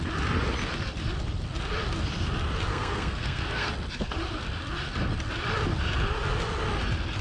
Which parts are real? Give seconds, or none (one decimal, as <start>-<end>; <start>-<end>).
0.0-2.7; 3.7-7.2